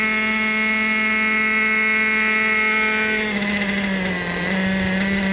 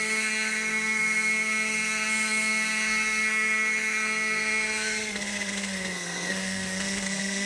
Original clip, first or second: first